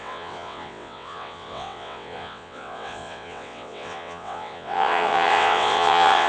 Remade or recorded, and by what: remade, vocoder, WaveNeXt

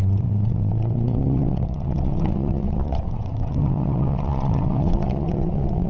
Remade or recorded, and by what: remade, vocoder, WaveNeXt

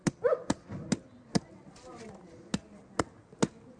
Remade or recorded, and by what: recorded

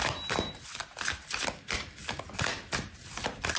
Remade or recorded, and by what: recorded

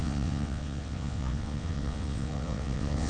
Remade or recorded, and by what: remade, vocoder, WaveNeXt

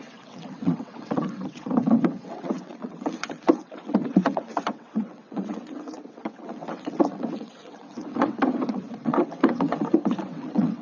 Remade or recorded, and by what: remade, vocoder, WaveNeXt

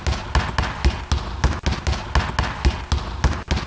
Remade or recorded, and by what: recorded